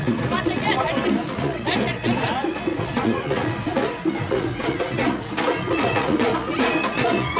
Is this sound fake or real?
fake